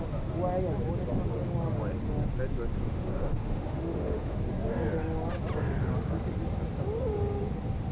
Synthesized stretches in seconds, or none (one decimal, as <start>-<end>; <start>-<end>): 2.8-4.4